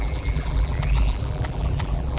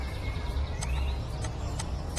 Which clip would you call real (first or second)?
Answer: second